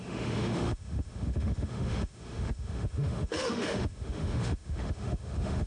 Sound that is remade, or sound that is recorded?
remade